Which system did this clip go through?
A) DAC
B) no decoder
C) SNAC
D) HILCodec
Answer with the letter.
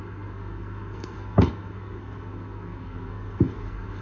C